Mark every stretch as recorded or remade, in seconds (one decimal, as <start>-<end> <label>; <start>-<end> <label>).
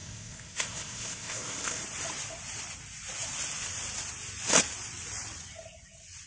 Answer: 0.0-1.8 remade; 1.8-6.3 recorded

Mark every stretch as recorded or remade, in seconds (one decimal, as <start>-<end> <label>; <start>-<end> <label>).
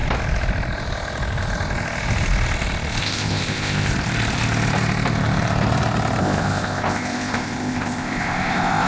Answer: 0.0-3.0 recorded; 3.0-3.9 remade; 3.9-6.2 recorded; 6.2-8.9 remade